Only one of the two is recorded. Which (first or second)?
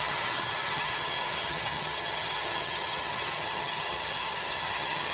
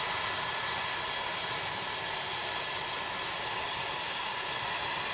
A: second